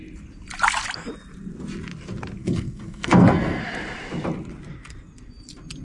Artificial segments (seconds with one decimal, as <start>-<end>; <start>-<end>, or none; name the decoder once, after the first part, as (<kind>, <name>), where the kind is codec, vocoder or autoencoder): 2.4-3.6 (codec, SNAC)